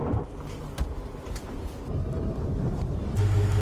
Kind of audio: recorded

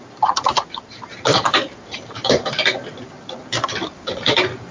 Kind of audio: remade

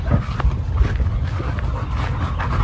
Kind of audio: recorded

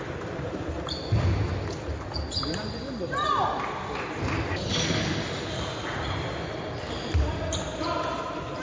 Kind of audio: recorded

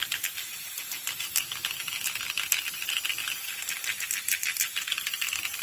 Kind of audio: remade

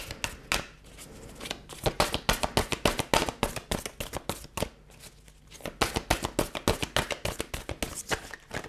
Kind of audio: recorded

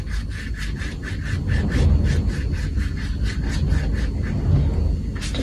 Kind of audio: recorded